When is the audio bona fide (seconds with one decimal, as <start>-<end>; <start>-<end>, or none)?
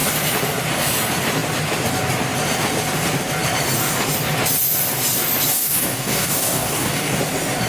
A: 0.0-5.5; 7.2-7.7